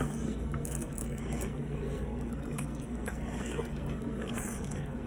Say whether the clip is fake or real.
fake